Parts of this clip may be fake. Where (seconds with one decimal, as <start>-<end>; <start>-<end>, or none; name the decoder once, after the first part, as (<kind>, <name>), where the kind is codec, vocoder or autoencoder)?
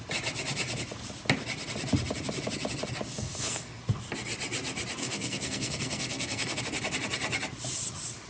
3.1-3.8 (codec, SNAC); 5.0-6.6